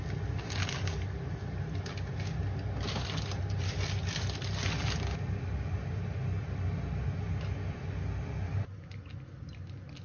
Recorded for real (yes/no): yes